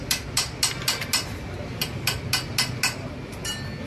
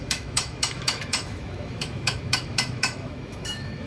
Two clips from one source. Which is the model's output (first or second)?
second